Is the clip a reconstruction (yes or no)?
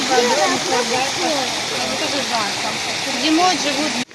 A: no